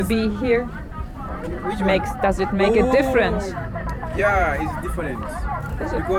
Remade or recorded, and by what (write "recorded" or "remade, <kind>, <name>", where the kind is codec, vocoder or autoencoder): remade, vocoder, BigVGAN v2